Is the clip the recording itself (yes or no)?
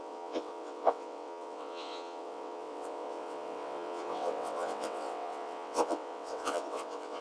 no